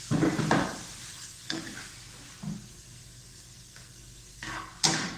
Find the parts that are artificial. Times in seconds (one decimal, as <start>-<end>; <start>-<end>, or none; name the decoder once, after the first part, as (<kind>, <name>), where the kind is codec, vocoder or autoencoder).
1.1-1.6 (codec, SNAC); 2.7-4.7